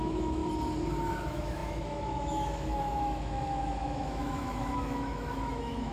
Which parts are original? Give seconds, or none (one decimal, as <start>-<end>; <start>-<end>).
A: 0.4-1.1